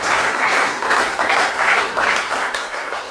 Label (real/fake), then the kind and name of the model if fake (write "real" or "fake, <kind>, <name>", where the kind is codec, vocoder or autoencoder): fake, codec, SNAC